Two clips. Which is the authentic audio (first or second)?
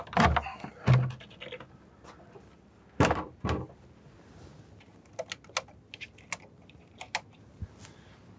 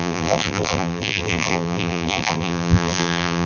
first